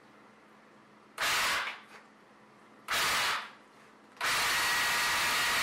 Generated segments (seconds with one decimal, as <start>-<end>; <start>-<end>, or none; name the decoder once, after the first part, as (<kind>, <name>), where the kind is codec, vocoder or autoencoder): none